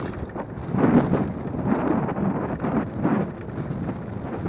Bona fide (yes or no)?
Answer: yes